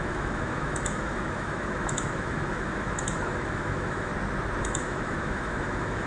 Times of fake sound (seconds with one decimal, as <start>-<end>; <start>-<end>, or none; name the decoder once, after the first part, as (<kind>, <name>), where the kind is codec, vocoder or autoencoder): 0.0-4.1 (autoencoder, DAC-VAE); 4.6-6.1